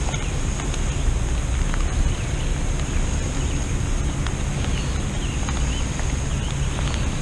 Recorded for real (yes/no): yes